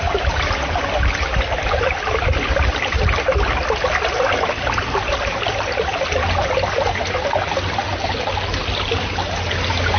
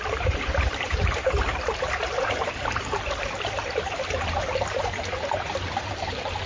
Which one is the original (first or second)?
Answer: first